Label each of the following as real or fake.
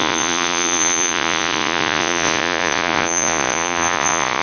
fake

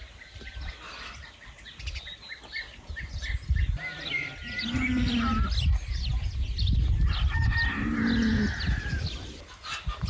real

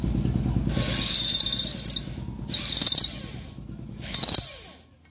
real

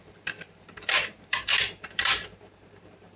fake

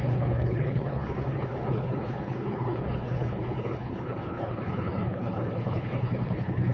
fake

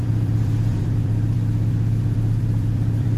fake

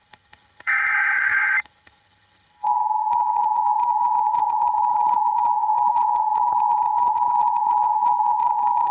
fake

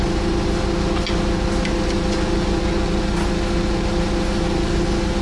real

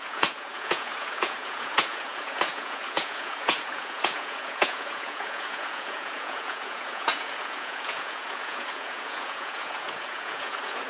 fake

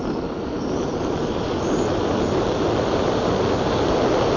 real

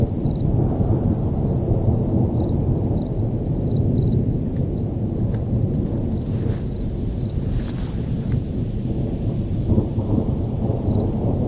real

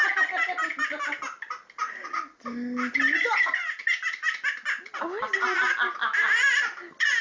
real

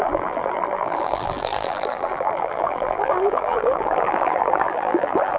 fake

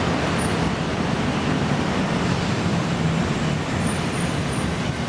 fake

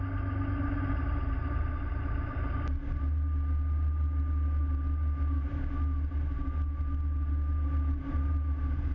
real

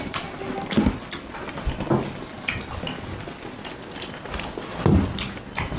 real